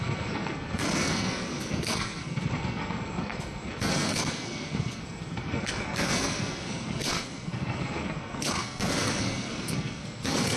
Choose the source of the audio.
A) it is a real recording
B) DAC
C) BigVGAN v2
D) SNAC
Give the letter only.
D